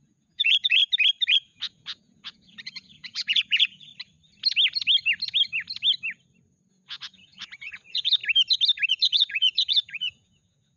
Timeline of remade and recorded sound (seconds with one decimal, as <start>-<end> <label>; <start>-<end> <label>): 0.0-0.8 remade; 0.8-1.3 recorded; 1.3-3.9 remade; 3.9-6.7 recorded; 6.7-8.2 remade; 8.2-8.9 recorded; 8.9-10.8 remade